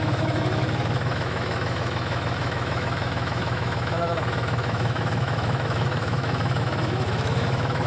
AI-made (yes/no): yes